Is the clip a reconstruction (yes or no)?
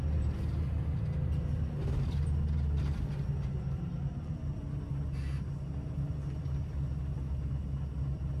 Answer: no